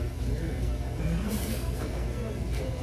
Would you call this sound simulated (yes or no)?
yes